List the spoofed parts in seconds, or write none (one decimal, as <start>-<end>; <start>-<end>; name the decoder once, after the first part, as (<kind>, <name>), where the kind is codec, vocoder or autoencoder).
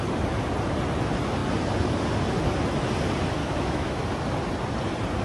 3.4-4.0 (autoencoder, DAC-VAE)